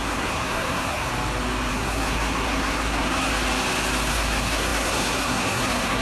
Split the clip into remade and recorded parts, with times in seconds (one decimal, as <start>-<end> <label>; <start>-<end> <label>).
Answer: 0.0-1.1 remade; 1.1-1.7 recorded; 1.7-3.3 remade; 3.3-4.1 recorded; 4.1-6.0 remade